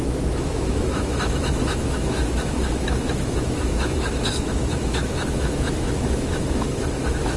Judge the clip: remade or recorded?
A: remade